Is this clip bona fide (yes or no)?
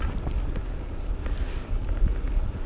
yes